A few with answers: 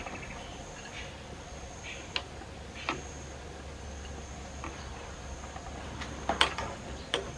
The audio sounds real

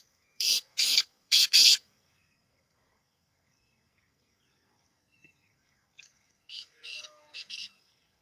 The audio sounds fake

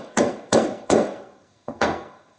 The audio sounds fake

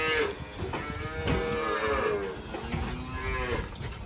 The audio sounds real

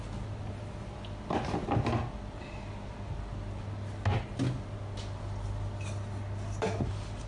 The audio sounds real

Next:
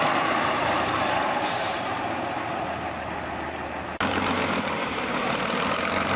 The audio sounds real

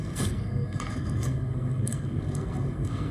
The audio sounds fake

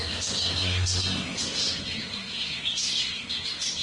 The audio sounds fake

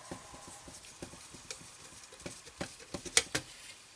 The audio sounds real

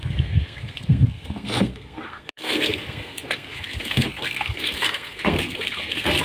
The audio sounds fake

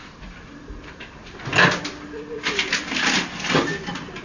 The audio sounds real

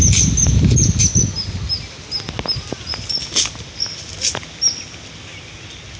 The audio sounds real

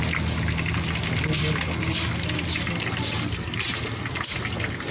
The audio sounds real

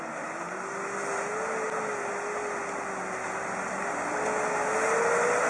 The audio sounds real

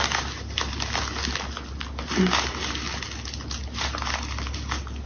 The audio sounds real